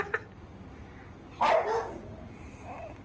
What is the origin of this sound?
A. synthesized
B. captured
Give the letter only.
B